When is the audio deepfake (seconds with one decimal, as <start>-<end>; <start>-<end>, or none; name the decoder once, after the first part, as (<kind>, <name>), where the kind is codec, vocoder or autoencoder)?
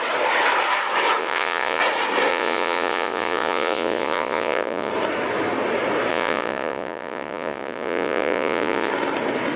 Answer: 1.2-1.8 (vocoder, Vocos); 2.3-4.9; 6.1-8.9